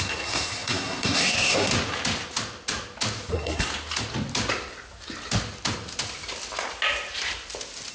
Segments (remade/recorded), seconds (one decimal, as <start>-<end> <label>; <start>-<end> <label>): 0.0-1.7 remade; 1.7-3.3 recorded; 3.3-3.7 remade; 3.7-7.9 recorded